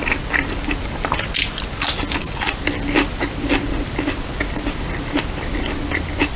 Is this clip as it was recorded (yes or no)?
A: yes